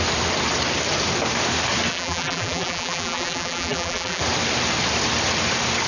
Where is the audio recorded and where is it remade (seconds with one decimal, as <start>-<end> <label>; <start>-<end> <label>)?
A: 0.0-1.9 recorded; 1.9-4.2 remade; 4.2-5.9 recorded